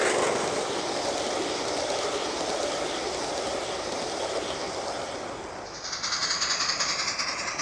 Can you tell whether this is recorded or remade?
recorded